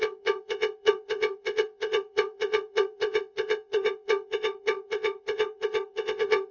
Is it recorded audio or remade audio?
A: remade